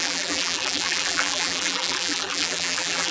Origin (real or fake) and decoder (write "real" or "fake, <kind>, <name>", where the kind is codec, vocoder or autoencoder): fake, vocoder, BigVGAN v2